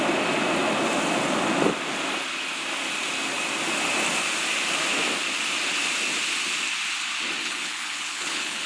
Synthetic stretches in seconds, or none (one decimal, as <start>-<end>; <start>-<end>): 7.4-8.7